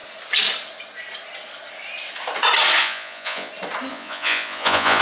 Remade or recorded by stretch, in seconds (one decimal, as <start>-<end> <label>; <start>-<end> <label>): 0.0-2.8 recorded; 2.8-3.5 remade; 3.5-3.9 recorded; 3.9-5.0 remade